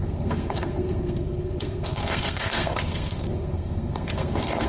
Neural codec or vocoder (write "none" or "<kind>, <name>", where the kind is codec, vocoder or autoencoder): codec, SNAC